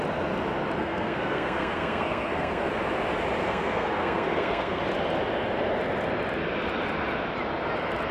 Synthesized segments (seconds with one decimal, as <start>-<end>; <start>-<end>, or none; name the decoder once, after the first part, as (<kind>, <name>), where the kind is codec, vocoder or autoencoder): 0.8-2.7 (codec, SNAC); 3.4-4.8